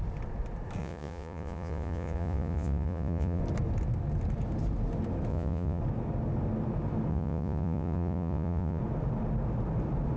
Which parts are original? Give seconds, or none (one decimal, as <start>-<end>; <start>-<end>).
0.0-0.8; 3.4-5.3; 5.8-7.1; 8.8-10.2